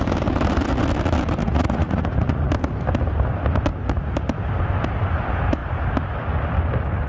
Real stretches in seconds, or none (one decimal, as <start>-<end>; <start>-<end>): 0.0-1.4; 2.5-7.1